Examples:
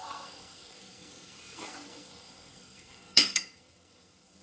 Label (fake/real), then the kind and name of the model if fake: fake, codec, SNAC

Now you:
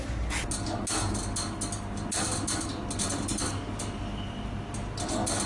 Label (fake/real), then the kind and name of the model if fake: real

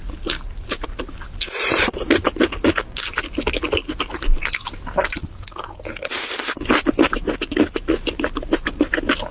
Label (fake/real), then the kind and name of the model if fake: real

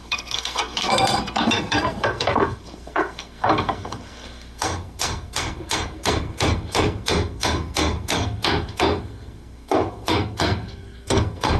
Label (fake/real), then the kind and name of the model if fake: fake, codec, SNAC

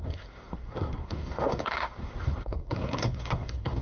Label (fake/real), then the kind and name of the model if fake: fake, codec, SNAC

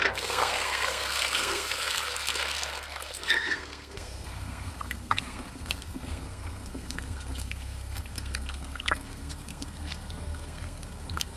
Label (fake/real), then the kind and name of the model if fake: fake, codec, SNAC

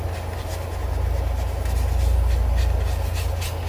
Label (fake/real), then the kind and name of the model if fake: real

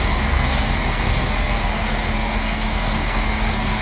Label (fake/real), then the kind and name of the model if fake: fake, codec, SNAC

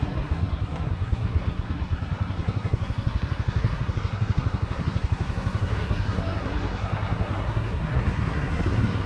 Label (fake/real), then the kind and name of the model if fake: fake, codec, SNAC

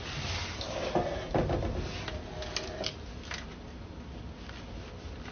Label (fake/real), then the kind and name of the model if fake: real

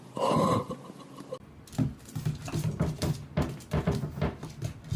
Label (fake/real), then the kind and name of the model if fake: real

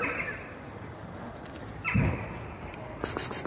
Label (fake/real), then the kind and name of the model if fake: real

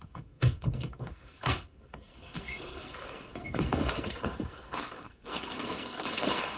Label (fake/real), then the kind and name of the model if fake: fake, codec, SNAC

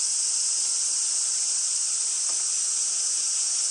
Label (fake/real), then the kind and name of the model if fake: real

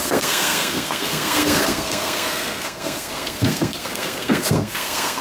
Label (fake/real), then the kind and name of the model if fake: fake, codec, SNAC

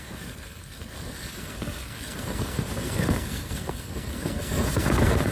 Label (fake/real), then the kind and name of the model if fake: fake, codec, SNAC